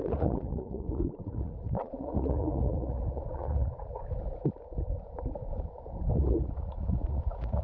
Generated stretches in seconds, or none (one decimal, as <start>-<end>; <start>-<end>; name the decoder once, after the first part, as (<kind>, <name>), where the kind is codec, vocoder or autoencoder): 0.0-4.0 (vocoder, Vocos); 6.2-7.6

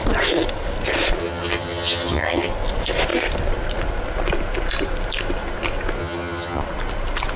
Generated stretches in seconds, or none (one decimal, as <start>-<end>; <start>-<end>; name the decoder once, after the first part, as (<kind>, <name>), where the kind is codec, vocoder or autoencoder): 1.2-2.5 (vocoder, HiFi-GAN); 6.0-6.6

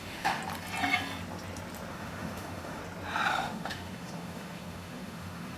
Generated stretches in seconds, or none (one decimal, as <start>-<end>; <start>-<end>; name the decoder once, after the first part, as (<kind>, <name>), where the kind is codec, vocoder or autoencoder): 0.0-0.4 (autoencoder, DAC-VAE); 1.9-2.8; 3.3-5.6

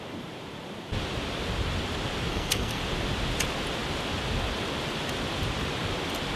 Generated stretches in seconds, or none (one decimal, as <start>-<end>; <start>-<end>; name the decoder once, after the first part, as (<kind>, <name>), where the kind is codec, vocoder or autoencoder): 2.3-2.8 (codec, SNAC)